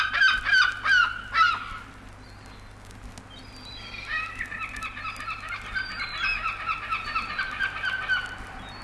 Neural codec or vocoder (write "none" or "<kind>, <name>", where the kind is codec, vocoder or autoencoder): none